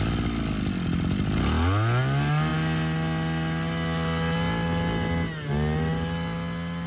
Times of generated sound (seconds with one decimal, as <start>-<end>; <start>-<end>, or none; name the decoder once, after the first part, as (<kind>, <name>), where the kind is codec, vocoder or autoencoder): none